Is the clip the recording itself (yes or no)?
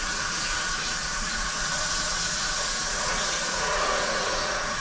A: no